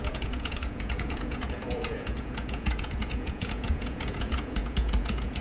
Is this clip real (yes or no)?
no